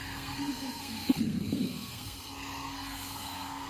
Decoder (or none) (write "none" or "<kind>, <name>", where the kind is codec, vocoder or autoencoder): codec, SNAC